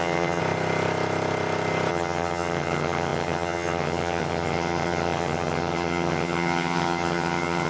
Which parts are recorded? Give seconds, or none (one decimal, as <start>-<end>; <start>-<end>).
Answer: 0.4-1.9

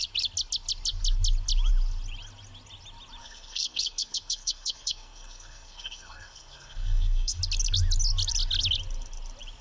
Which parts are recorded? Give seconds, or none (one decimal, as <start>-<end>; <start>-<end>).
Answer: 0.0-3.2; 7.4-9.6

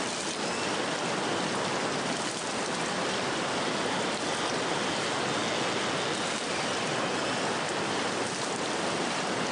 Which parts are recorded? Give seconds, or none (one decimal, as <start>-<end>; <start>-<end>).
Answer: 0.0-9.5

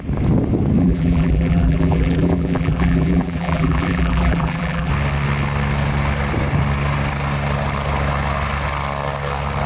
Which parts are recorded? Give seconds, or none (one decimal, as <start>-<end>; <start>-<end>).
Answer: 0.0-0.8; 4.9-9.7

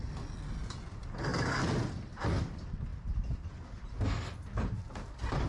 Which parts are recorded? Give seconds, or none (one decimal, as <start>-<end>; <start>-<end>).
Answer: 0.0-5.5